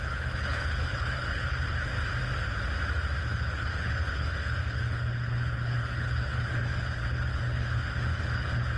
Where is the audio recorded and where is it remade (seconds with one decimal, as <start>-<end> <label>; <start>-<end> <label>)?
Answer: 0.0-1.9 remade; 1.9-3.2 recorded; 3.2-8.8 remade